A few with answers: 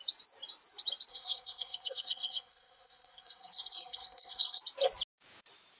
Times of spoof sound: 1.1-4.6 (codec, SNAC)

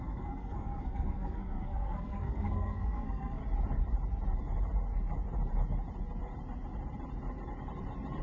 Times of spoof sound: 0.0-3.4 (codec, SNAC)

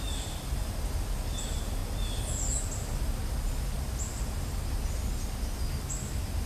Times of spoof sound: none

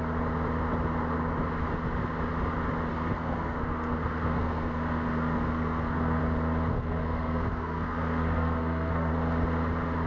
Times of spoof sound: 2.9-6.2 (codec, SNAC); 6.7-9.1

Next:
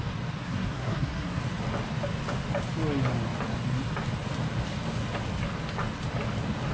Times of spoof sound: 0.4-1.4 (codec, SNAC)

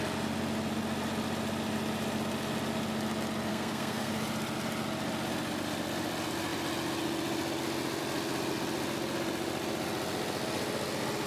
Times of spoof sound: 3.5-4.1 (codec, SNAC)

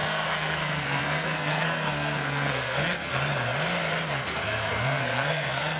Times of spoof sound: 0.0-3.1 (codec, SNAC); 4.1-5.8

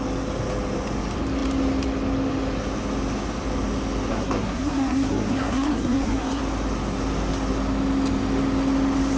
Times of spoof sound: 4.1-6.4 (codec, SNAC)